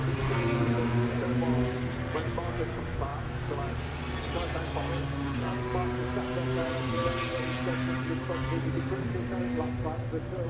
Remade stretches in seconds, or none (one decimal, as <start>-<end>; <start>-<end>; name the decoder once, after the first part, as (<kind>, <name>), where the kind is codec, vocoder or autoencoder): none